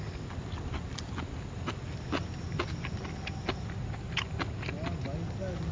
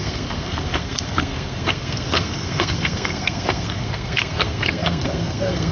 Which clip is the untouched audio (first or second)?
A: first